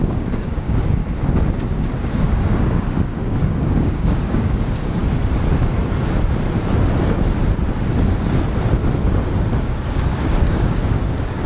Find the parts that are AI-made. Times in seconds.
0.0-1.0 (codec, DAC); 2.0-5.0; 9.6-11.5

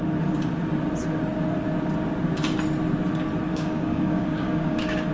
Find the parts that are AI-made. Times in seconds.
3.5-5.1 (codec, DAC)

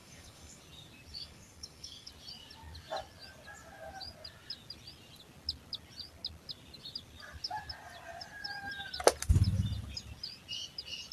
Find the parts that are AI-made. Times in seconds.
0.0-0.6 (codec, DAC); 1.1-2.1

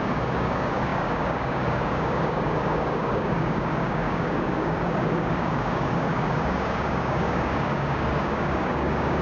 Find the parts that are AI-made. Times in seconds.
0.0-9.2 (codec, DAC)

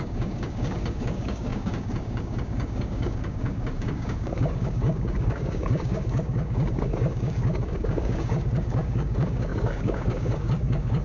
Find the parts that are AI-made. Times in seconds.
0.0-11.0 (codec, DAC)

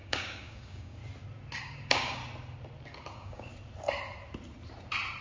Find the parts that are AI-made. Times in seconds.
0.0-1.0 (codec, DAC); 1.6-2.2; 3.1-3.5

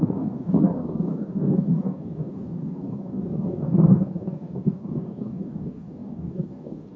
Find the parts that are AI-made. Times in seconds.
0.0-7.0 (codec, DAC)

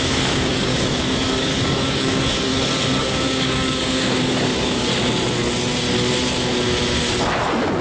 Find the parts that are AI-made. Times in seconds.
0.0-2.5 (codec, DAC); 3.0-4.9